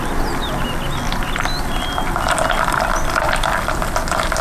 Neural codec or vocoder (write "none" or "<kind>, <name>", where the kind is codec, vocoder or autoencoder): none